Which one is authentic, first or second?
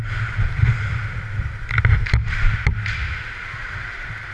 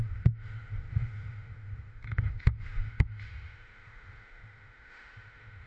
first